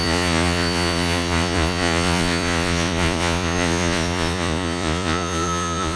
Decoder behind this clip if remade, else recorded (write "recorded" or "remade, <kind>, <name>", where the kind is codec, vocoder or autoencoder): remade, vocoder, Vocos